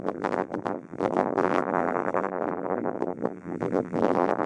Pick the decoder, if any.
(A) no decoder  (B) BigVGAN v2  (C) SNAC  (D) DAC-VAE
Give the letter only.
B